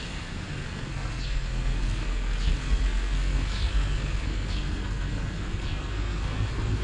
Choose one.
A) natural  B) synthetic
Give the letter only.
B